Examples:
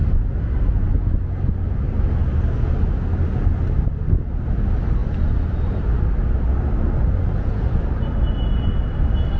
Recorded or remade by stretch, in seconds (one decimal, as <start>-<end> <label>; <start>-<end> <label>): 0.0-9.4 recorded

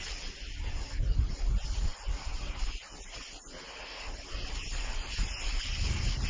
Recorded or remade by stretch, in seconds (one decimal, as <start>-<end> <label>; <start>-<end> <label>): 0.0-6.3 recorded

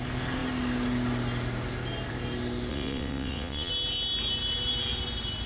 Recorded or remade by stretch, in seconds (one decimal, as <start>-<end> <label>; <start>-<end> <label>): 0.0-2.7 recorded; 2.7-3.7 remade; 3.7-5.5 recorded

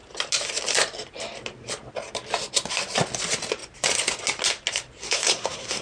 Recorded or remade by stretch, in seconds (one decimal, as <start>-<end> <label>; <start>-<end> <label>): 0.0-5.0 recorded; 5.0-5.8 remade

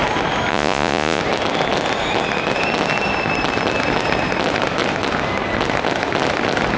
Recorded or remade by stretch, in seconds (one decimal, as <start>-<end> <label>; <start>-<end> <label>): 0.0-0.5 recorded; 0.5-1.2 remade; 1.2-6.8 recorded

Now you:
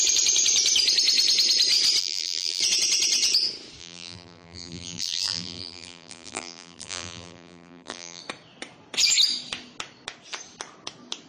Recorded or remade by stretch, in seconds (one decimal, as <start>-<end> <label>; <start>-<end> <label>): 0.0-2.0 recorded; 2.0-2.6 remade; 2.6-3.8 recorded; 3.8-8.2 remade; 8.2-11.3 recorded